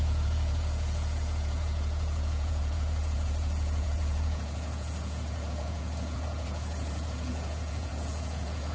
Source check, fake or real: fake